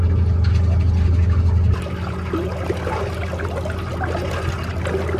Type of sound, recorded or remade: recorded